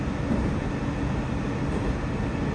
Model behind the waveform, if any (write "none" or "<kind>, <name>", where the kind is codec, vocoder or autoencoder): none